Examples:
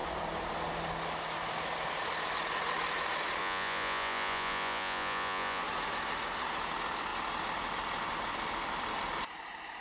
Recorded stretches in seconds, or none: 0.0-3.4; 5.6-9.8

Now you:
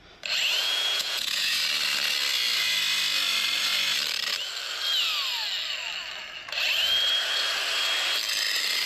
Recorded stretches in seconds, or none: 0.0-0.6; 1.6-8.9

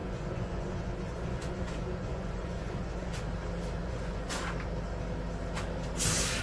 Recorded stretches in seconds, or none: 3.2-3.8; 4.4-6.4